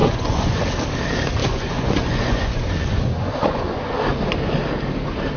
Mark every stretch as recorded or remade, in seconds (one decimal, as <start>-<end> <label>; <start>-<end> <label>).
0.0-0.6 remade; 0.6-1.4 recorded; 1.4-4.0 remade; 4.0-5.4 recorded